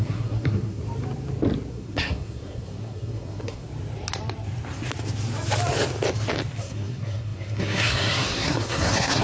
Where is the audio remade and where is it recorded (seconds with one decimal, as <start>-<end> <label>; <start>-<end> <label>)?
0.0-0.8 remade; 0.8-1.7 recorded; 1.7-3.7 remade; 3.7-6.6 recorded; 6.6-9.2 remade